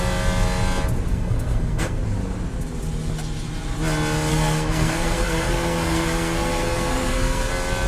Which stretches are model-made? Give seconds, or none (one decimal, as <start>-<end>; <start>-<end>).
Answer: 1.1-2.0; 4.3-7.5